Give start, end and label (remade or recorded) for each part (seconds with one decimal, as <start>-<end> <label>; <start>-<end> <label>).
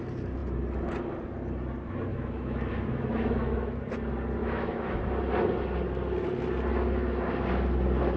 0.0-2.1 recorded; 2.1-3.8 remade; 3.8-4.4 recorded; 4.4-5.0 remade; 5.0-8.2 recorded